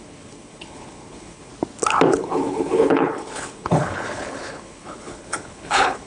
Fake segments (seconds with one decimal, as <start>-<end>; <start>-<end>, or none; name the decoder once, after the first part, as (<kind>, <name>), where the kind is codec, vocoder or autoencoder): 0.0-1.5 (codec, HILCodec); 2.1-6.1